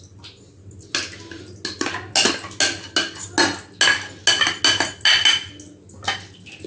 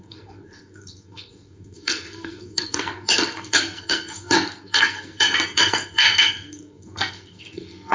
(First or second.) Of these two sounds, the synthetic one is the second